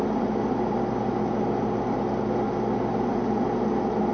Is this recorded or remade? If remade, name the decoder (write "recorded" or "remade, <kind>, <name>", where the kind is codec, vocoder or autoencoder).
recorded